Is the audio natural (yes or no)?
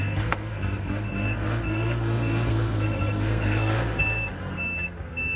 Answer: no